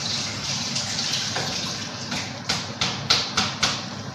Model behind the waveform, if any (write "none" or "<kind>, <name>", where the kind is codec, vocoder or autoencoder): none